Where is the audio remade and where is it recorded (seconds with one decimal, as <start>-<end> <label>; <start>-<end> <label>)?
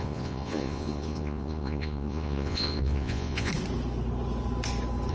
0.0-3.5 remade; 3.5-5.1 recorded